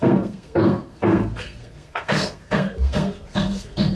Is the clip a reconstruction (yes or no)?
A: yes